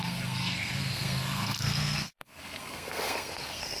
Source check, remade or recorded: remade